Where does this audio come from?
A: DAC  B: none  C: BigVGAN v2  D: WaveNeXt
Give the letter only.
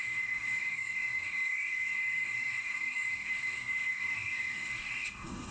A